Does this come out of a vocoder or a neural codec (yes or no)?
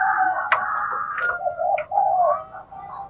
no